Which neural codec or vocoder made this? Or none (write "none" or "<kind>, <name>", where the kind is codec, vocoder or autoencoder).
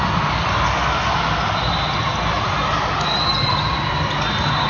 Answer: none